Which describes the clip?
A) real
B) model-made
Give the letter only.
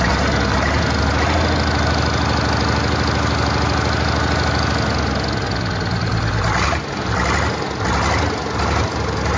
A